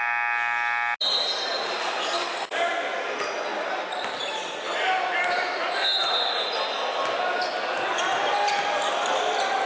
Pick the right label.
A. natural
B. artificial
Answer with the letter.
A